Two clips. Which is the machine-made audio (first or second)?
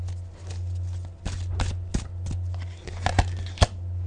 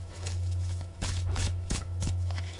second